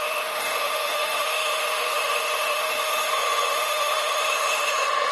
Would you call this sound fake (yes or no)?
yes